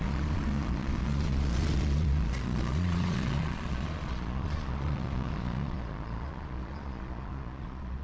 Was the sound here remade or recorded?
remade